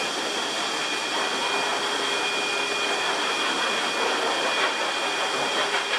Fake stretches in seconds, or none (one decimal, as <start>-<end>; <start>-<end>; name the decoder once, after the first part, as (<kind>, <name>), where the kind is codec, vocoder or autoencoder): none

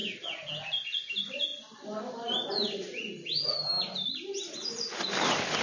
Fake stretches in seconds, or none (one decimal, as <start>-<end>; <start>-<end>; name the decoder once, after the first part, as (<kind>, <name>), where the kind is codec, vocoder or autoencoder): 0.5-1.5 (vocoder, BigVGAN v2); 4.9-5.6

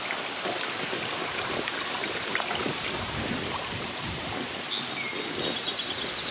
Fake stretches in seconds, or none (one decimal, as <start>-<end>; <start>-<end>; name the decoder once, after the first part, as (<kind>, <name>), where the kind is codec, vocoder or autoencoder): 1.2-4.7 (vocoder, BigVGAN v2)

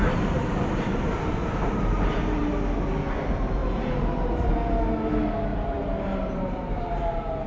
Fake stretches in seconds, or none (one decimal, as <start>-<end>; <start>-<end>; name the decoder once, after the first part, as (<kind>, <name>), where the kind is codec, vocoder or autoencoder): 0.0-2.5 (vocoder, BigVGAN v2); 3.6-4.5; 5.5-6.9

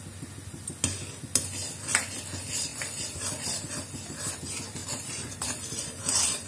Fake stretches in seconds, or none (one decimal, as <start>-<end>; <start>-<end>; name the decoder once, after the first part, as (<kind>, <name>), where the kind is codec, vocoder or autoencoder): 2.7-3.7 (vocoder, BigVGAN v2); 4.8-6.5